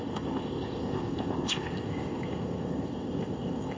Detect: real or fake fake